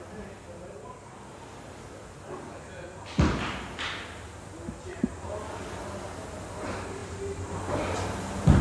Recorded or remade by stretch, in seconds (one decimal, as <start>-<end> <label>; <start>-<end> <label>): 0.0-8.6 recorded